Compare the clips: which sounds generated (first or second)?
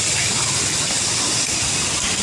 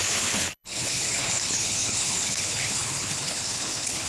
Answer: second